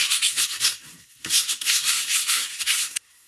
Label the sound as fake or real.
fake